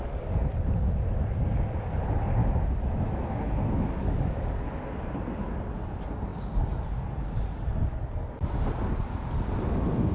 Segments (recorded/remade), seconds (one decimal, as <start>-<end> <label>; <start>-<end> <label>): 0.0-2.4 recorded; 2.4-4.4 remade; 4.4-10.1 recorded